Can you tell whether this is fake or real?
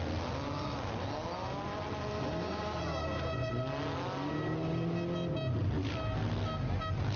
real